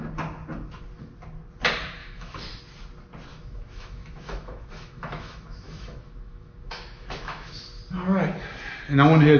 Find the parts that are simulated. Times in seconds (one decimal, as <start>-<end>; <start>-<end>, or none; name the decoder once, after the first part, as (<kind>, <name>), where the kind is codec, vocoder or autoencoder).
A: 2.0-2.6 (autoencoder, DAC-VAE); 3.3-7.5